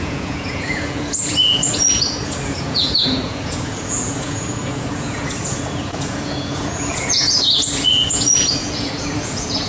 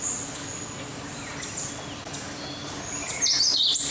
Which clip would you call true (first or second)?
second